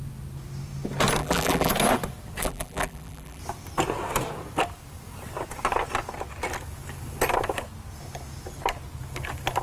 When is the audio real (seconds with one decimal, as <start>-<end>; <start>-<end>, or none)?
0.0-1.2; 1.7-2.4; 3.4-9.6